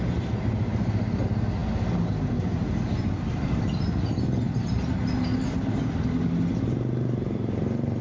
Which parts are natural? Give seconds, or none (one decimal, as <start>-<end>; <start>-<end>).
0.0-8.0